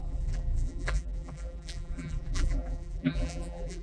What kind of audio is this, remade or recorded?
remade